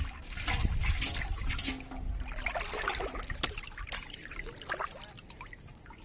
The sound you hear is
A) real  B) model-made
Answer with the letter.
A